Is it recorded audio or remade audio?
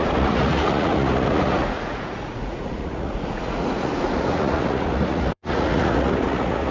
remade